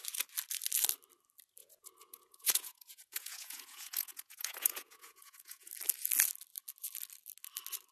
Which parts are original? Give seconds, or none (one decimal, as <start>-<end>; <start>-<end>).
0.0-1.6; 5.7-7.9